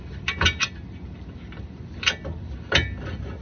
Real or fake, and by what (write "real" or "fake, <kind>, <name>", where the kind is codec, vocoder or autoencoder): real